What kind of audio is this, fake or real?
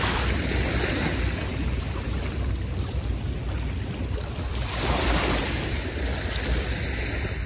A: real